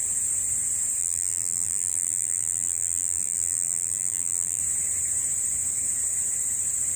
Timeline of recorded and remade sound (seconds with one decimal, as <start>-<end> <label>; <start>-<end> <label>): 0.0-1.0 recorded; 1.0-4.6 remade; 4.6-7.0 recorded